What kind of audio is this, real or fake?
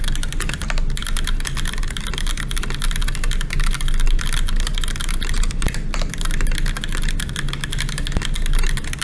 real